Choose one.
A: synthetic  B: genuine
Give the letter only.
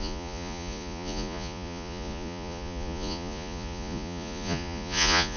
A